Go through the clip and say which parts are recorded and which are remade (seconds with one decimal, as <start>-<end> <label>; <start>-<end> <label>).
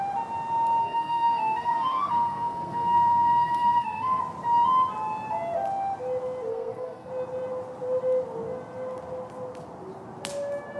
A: 0.0-0.8 recorded; 0.8-4.2 remade; 4.2-6.5 recorded; 6.5-7.1 remade; 7.1-10.8 recorded